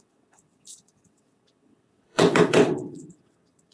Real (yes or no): no